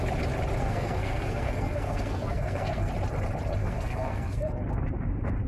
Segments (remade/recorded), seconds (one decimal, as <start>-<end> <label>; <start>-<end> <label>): 0.0-0.6 recorded; 0.6-2.9 remade; 2.9-3.6 recorded; 3.6-4.8 remade; 4.8-5.5 recorded